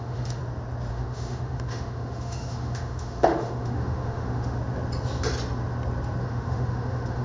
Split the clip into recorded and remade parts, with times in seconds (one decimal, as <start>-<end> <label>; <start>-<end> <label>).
0.0-0.4 remade; 0.4-0.9 recorded; 0.9-4.6 remade; 4.6-6.2 recorded; 6.2-7.2 remade

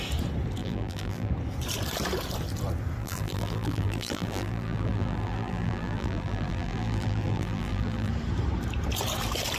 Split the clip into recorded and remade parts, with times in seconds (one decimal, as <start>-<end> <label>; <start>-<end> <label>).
0.0-0.6 recorded; 0.6-1.3 remade; 1.3-3.0 recorded; 3.0-8.1 remade; 8.1-9.6 recorded